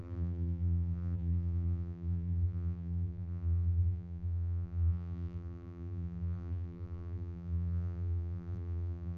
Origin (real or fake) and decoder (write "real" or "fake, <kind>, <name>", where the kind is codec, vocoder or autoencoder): fake, vocoder, BigVGAN v2